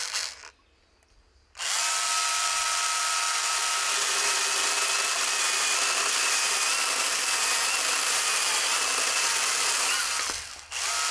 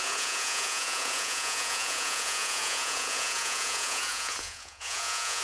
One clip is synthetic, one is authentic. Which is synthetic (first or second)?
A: second